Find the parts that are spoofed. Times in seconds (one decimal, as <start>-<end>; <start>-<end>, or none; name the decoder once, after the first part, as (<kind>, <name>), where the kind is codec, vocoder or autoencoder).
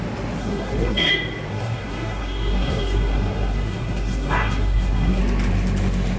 0.4-1.1 (codec, SNAC); 1.5-5.2